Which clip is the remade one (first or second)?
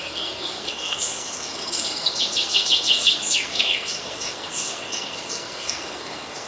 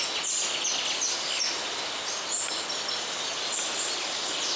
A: first